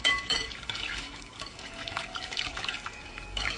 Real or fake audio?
fake